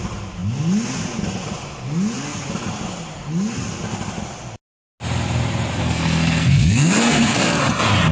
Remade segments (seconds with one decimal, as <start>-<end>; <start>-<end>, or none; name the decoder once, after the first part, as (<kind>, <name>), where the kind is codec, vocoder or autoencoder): 5.8-7.6 (codec, SNAC)